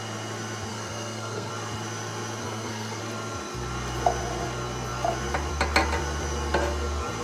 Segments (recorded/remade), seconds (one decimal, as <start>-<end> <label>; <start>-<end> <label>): 0.0-0.7 recorded; 0.7-1.5 remade; 1.5-2.4 recorded; 2.4-3.0 remade; 3.0-7.2 recorded